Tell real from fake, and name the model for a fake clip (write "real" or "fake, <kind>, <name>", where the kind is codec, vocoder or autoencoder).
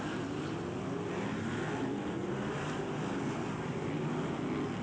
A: real